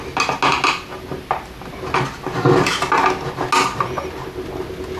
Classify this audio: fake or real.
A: real